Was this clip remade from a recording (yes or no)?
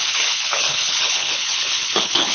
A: yes